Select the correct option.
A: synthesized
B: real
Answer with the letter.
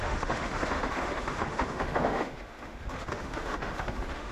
A